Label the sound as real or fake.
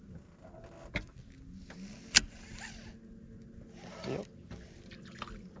real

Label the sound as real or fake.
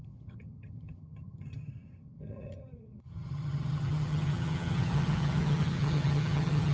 fake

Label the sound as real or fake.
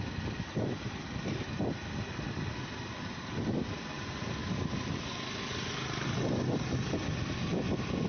real